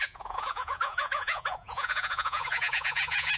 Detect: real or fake fake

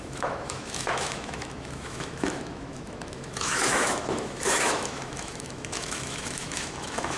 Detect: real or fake fake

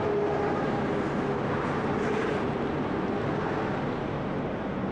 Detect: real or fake real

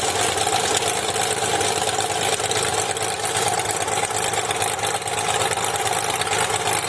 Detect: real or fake real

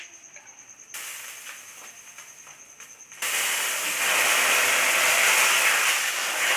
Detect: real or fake real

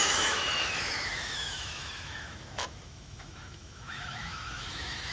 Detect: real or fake fake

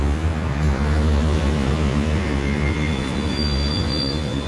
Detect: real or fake fake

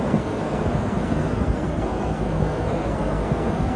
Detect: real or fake fake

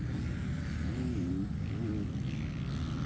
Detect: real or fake real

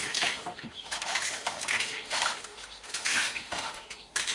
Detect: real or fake fake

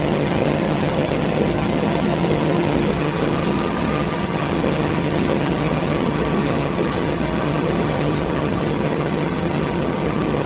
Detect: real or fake fake